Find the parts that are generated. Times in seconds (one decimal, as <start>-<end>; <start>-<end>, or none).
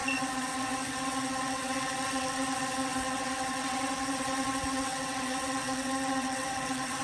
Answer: 0.0-7.0